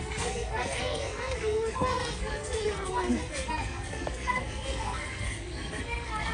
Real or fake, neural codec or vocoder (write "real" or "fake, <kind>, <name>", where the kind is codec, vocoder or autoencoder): fake, codec, SNAC